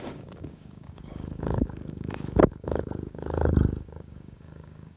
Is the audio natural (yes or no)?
no